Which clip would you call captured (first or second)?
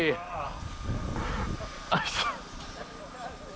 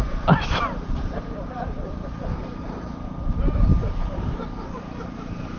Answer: first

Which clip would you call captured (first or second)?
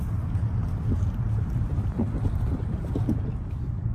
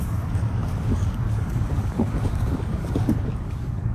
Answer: first